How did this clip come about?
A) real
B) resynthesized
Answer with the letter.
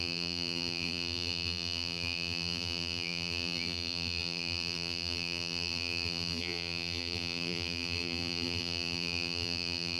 B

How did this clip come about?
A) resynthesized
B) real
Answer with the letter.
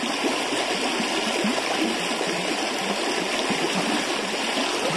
B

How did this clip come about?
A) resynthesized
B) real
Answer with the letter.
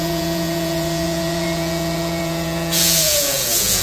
A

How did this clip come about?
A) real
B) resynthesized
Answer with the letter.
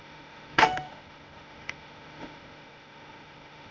B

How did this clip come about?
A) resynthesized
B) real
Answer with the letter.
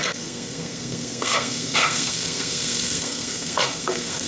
A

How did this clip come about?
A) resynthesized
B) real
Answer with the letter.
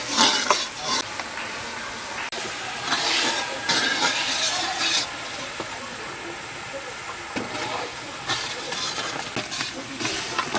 B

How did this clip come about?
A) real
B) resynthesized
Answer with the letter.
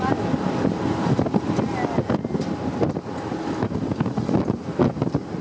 A